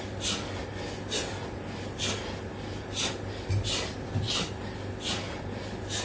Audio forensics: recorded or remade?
recorded